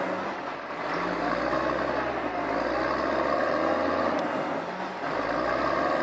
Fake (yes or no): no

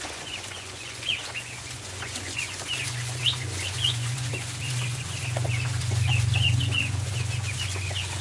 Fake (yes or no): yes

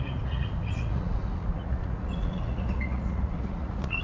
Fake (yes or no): yes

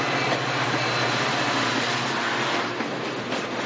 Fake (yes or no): no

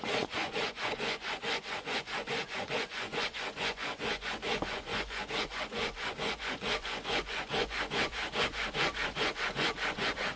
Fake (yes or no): yes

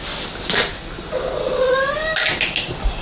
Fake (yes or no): no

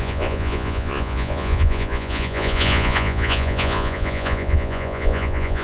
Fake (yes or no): yes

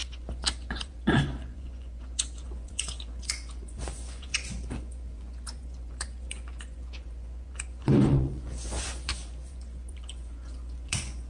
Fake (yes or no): yes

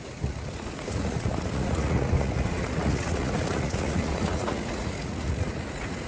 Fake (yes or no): yes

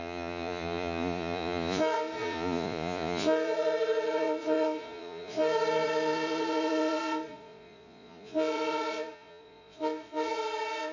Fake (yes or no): yes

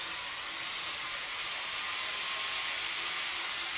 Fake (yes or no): no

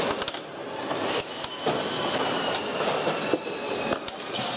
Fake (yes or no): no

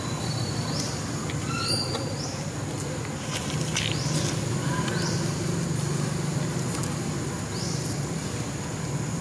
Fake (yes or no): no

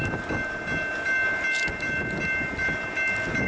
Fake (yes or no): no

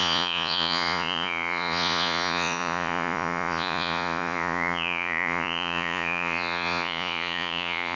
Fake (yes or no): yes